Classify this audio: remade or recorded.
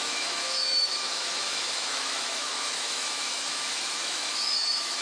remade